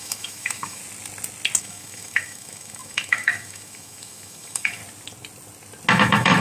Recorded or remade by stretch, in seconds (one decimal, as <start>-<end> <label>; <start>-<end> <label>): 0.0-0.8 remade; 0.8-1.6 recorded; 1.6-4.8 remade; 4.8-5.9 recorded; 5.9-6.4 remade

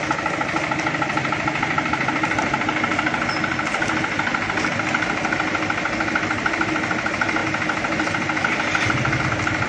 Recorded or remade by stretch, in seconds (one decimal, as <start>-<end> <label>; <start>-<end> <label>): 0.0-9.7 recorded

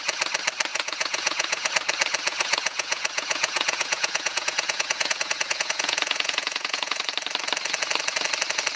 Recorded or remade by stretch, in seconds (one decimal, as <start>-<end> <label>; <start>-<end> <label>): 0.0-0.7 recorded; 0.7-1.7 remade; 1.7-2.3 recorded; 2.3-7.0 remade; 7.0-8.8 recorded

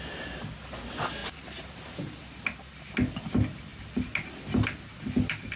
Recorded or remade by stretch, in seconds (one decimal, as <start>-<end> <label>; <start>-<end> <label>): 0.0-5.6 recorded

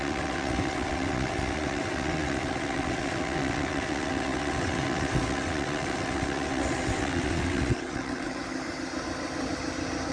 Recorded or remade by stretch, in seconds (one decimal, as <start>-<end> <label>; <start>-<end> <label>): 0.0-8.4 remade; 8.4-10.1 recorded

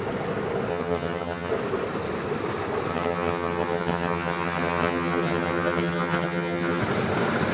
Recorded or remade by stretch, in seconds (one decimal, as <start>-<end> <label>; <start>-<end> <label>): 0.0-0.7 recorded; 0.7-1.5 remade; 1.5-2.9 recorded; 2.9-6.8 remade; 6.8-7.5 recorded

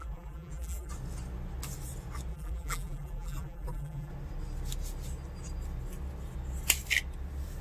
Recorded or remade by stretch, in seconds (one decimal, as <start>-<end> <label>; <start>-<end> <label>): 0.0-0.9 remade; 0.9-2.3 recorded; 2.3-4.1 remade; 4.1-7.6 recorded